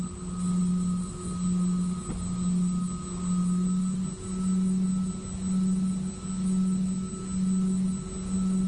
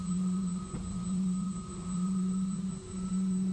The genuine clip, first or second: first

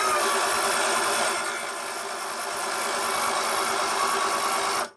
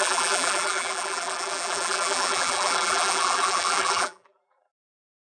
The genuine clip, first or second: first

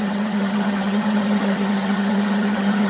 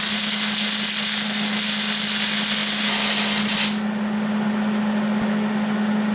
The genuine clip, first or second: second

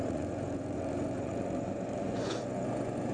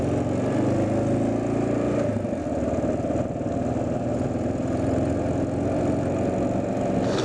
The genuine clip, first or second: second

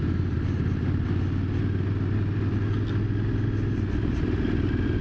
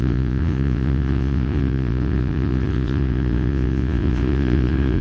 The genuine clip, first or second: first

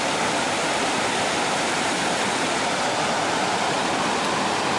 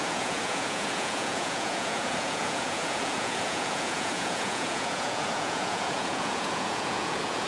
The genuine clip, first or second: first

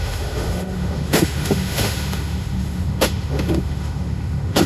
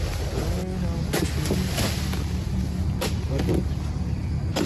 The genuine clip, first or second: second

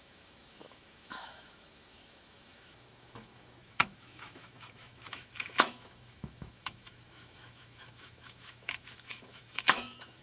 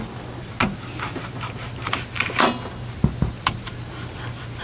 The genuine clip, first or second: second